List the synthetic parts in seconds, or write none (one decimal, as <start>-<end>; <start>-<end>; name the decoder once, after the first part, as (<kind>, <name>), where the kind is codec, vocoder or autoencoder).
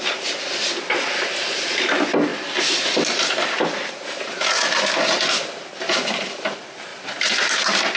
none